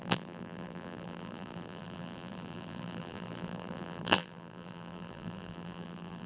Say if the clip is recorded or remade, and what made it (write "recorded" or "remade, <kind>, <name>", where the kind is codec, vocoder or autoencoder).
remade, vocoder, BigVGAN v2